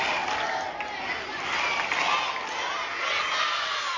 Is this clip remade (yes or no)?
no